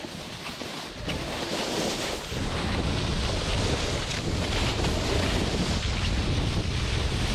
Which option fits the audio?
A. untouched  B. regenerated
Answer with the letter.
A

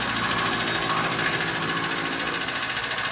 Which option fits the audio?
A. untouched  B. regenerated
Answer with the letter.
A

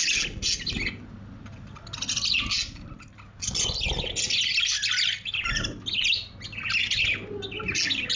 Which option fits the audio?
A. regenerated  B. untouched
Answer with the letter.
B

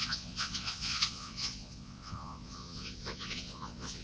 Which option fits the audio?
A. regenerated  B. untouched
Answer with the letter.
A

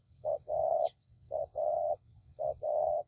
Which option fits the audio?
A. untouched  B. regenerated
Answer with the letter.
B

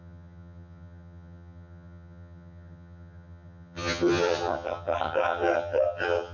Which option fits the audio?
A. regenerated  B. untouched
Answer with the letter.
A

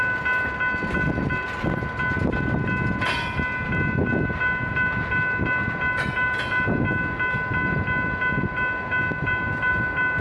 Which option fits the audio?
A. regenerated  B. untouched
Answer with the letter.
B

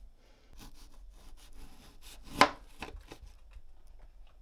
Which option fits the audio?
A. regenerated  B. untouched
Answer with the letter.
B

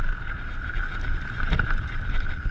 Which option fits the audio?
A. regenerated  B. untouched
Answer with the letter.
B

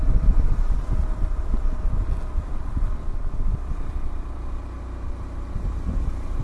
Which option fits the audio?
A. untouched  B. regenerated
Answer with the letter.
A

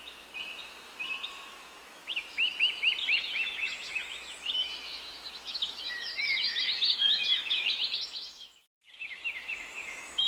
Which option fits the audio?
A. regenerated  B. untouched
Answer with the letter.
A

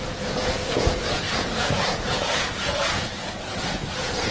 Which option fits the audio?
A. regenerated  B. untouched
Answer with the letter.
A